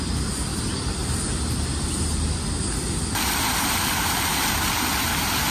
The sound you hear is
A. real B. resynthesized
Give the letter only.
A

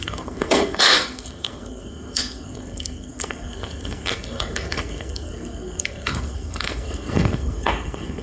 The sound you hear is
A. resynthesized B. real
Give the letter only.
A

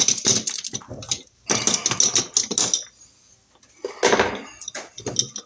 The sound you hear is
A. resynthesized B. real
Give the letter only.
B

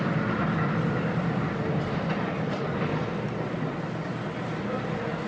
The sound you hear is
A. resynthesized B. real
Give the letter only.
B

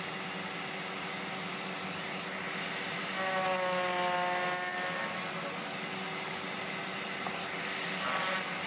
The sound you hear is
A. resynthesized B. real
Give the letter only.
B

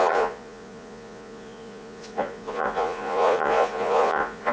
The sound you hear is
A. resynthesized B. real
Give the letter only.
A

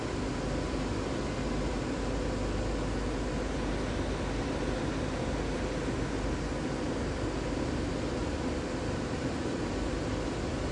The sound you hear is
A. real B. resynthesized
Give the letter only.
A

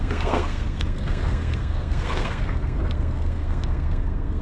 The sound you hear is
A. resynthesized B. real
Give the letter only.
A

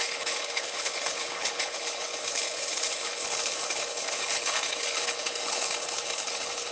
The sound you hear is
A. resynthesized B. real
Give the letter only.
A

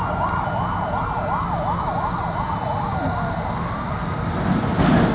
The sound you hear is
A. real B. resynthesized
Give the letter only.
A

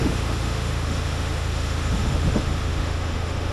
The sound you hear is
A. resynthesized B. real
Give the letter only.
A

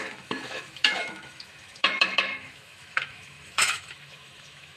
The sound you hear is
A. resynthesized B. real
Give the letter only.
A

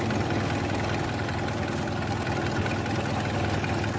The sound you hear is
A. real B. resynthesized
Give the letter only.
A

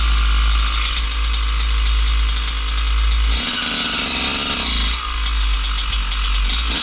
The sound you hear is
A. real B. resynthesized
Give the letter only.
A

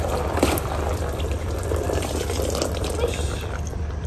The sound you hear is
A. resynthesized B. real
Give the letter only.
A